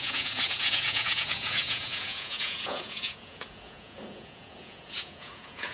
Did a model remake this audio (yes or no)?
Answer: yes